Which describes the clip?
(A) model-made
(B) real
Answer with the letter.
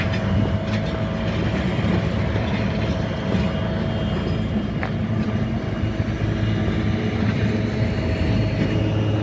B